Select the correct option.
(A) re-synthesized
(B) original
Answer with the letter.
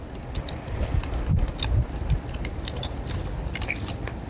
B